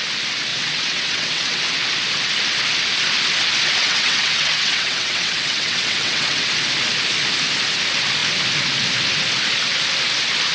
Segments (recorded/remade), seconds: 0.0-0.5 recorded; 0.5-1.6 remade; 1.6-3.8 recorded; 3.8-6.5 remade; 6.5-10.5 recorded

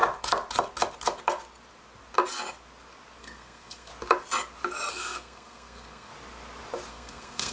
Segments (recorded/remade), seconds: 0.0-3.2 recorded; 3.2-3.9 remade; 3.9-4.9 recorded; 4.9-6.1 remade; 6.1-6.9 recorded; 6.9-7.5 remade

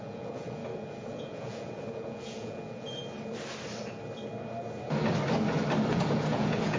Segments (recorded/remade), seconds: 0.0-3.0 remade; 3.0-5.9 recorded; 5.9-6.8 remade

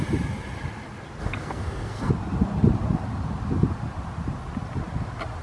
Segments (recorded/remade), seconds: 0.0-1.2 recorded; 1.2-2.1 remade; 2.1-5.4 recorded